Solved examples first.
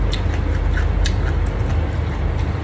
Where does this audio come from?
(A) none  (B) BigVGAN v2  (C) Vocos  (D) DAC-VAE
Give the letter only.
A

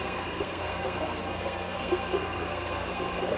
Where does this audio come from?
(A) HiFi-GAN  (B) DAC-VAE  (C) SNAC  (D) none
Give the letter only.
C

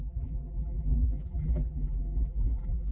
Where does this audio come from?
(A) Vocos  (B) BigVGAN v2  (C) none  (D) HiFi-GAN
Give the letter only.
B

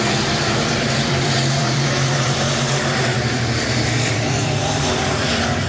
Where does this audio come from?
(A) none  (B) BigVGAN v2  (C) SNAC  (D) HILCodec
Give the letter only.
B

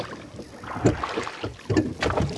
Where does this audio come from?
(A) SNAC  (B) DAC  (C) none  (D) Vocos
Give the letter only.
C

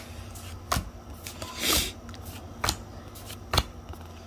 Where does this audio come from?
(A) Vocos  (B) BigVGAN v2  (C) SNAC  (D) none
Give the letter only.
D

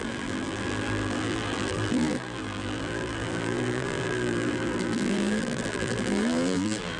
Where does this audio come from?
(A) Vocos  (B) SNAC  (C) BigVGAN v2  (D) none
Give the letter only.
C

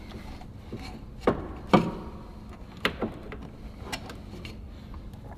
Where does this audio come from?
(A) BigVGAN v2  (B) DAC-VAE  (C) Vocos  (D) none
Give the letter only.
D